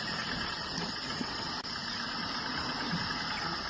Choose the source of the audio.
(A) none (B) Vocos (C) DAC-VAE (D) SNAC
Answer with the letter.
A